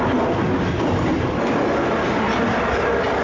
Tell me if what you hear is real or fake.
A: real